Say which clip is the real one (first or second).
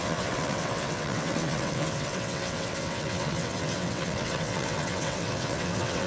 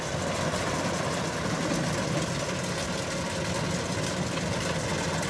second